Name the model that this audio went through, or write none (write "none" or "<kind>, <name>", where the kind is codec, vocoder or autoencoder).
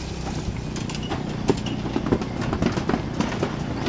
none